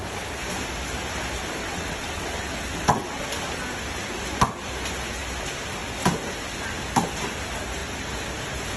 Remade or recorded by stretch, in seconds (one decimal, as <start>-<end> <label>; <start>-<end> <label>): 0.0-1.6 recorded; 1.6-3.2 remade; 3.2-8.8 recorded